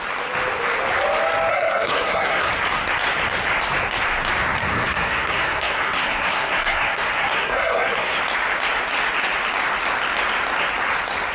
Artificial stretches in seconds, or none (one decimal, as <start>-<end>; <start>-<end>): 1.5-2.5; 4.6-8.2